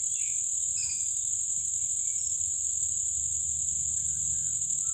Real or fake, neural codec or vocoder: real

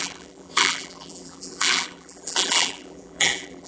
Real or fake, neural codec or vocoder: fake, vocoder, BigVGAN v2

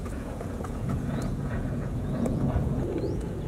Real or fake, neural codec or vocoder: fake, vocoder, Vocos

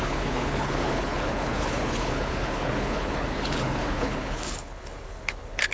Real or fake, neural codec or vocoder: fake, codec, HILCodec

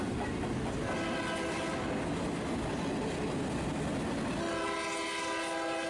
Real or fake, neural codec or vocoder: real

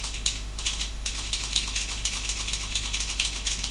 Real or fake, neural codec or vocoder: fake, autoencoder, DAC-VAE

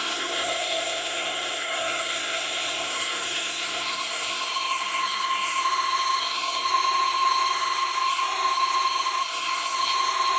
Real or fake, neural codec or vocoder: fake, codec, SNAC